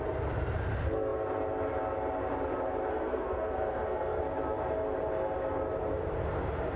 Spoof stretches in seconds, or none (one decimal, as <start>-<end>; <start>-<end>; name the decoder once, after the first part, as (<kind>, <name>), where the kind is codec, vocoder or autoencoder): 2.9-4.2 (codec, SNAC)